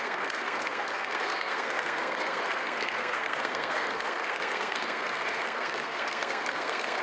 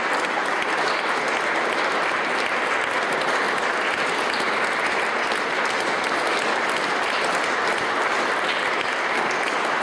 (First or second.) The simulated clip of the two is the first